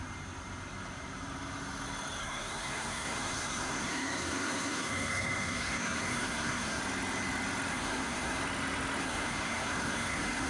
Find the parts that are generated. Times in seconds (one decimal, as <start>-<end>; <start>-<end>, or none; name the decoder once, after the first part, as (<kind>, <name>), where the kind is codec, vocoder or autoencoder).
2.2-6.8 (codec, SNAC); 7.7-8.4; 9.0-10.5